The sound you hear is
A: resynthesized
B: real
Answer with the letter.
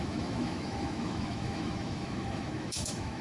A